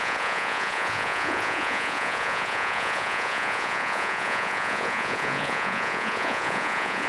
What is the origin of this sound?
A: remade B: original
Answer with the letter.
A